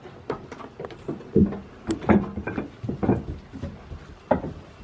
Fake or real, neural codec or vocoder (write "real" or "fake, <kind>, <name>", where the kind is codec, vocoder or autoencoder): real